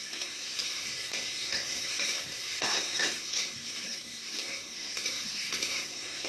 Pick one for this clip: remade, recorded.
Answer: remade